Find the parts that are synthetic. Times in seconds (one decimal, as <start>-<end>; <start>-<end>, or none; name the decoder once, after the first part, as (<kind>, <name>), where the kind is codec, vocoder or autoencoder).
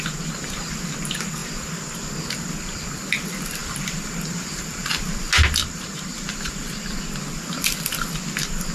3.6-4.9 (vocoder, BigVGAN v2); 5.6-6.9